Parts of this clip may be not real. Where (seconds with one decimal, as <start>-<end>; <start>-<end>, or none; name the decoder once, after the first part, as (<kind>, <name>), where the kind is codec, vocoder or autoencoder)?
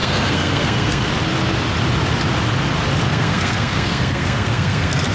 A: 0.0-1.1 (codec, SNAC); 3.1-5.1